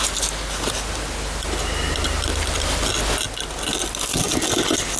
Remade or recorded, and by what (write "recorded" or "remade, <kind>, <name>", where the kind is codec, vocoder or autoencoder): recorded